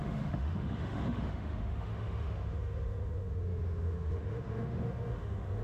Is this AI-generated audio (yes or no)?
yes